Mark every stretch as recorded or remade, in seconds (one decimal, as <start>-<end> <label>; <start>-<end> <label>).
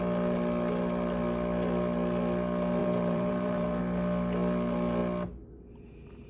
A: 0.0-2.8 recorded; 2.8-3.8 remade; 3.8-6.3 recorded